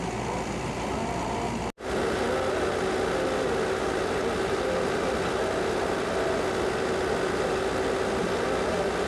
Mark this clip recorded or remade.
recorded